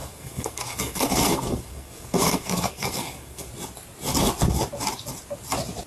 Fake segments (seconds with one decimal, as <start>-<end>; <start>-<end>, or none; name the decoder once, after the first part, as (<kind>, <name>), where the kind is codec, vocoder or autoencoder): 0.0-3.5 (codec, SNAC)